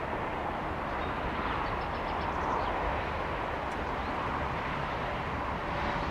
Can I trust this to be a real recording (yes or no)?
yes